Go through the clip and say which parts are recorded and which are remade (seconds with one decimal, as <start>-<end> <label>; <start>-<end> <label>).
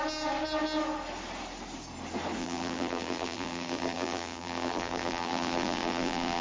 0.0-2.4 recorded; 2.4-6.4 remade